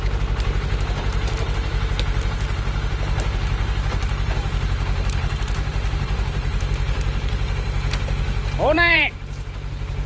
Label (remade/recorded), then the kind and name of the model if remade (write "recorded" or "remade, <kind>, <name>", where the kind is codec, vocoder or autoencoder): remade, vocoder, BigVGAN v2